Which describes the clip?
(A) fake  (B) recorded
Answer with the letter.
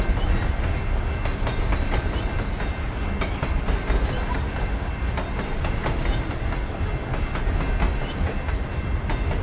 B